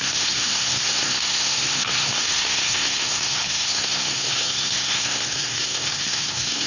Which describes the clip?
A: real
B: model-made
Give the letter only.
B